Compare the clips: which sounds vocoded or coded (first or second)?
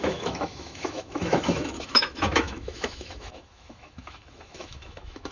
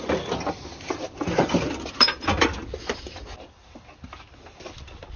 first